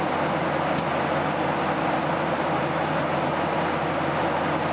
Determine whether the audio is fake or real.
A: real